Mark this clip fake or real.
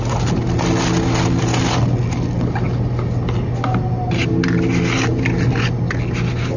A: real